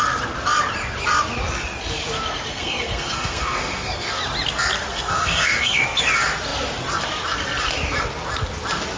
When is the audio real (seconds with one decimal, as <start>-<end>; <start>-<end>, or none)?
0.0-2.5; 4.2-4.9; 6.0-9.0